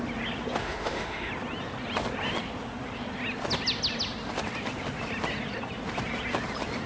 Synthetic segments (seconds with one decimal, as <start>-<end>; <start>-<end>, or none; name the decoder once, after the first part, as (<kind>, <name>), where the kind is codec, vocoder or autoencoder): 0.6-1.3 (autoencoder, DAC-VAE)